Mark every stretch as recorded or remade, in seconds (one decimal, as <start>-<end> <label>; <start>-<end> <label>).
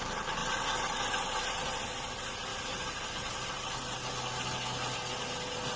0.0-5.8 recorded